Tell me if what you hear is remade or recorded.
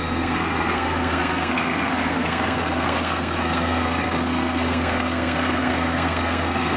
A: remade